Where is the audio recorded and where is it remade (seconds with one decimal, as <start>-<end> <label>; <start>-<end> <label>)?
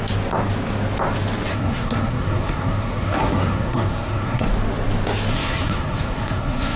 0.0-1.5 recorded; 1.5-4.5 remade; 4.5-5.3 recorded; 5.3-6.8 remade